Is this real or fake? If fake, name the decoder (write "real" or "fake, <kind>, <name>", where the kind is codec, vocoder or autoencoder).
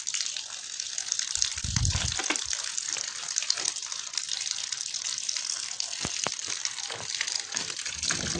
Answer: real